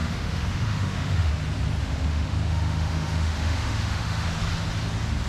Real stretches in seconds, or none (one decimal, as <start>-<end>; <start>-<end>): 1.3-1.8; 4.4-5.3